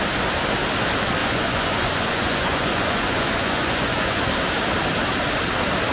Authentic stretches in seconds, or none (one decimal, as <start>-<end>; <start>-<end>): 0.0-1.2; 4.2-5.9